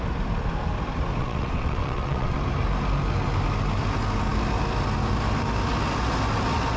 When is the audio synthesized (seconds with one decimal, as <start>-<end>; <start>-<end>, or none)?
1.2-2.4